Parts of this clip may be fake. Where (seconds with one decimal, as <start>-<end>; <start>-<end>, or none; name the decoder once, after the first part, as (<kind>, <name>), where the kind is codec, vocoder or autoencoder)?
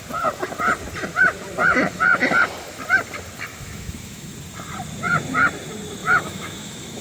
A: 3.5-4.3 (autoencoder, DAC-VAE); 6.0-7.0